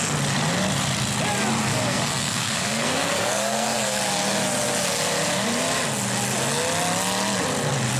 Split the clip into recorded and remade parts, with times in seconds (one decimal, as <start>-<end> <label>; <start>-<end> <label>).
0.0-1.7 recorded; 1.7-4.0 remade; 4.0-8.0 recorded